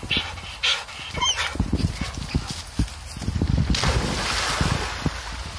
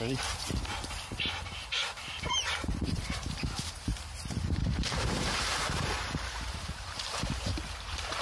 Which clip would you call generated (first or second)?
second